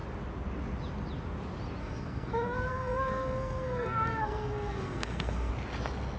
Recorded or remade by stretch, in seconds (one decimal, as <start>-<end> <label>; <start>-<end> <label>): 0.0-1.8 recorded; 1.8-5.5 remade; 5.5-6.2 recorded

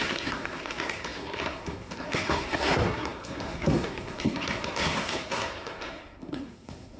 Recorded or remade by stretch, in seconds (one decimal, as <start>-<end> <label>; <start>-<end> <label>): 0.0-7.0 remade

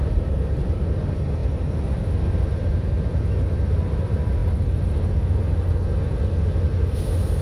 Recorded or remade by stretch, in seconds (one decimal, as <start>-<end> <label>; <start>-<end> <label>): 0.0-7.4 recorded